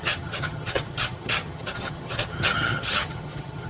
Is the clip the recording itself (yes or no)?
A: no